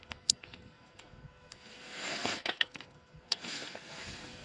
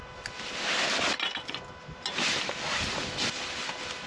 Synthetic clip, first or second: first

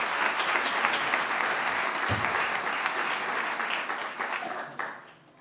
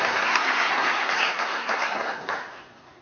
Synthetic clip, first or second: second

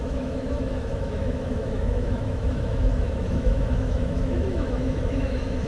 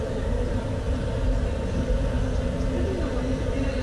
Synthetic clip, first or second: first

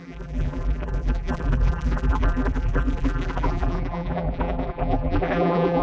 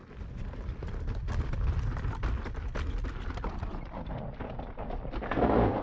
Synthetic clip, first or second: first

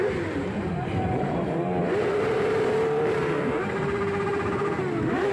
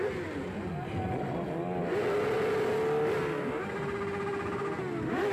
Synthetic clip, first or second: first